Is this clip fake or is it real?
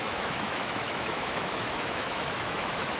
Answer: fake